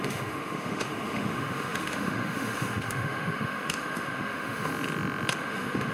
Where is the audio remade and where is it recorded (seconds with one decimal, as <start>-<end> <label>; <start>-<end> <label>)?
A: 0.0-4.7 remade; 4.7-5.3 recorded; 5.3-5.9 remade

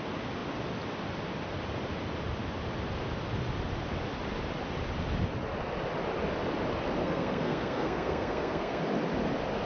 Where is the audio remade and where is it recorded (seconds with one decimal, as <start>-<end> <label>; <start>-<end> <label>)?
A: 0.0-7.0 recorded; 7.0-8.8 remade; 8.8-9.7 recorded

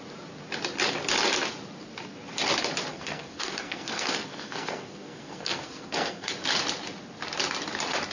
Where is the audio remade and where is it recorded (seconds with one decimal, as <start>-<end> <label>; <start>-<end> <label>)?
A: 0.0-2.9 recorded; 2.9-6.3 remade; 6.3-8.1 recorded

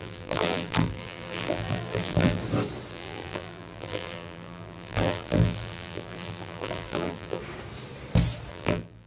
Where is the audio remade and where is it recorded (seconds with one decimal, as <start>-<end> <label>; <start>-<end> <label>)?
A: 0.0-2.4 remade; 2.4-2.9 recorded; 2.9-7.4 remade; 7.4-8.5 recorded; 8.5-9.1 remade

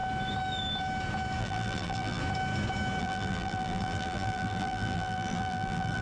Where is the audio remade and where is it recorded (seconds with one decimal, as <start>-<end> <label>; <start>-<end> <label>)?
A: 0.0-1.4 recorded; 1.4-2.2 remade; 2.2-3.0 recorded; 3.0-6.0 remade